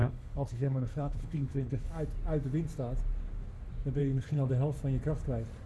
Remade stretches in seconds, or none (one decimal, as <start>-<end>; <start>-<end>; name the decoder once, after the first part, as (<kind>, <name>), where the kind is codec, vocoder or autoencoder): 0.0-1.9 (codec, HILCodec); 4.0-4.5